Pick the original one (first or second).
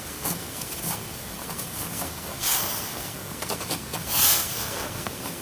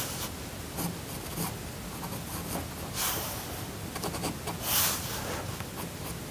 second